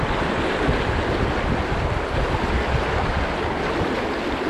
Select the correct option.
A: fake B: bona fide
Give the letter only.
B